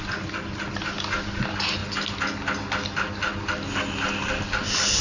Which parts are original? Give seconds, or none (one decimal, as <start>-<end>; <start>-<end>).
0.0-5.0